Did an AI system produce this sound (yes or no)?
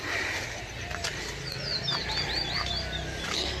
no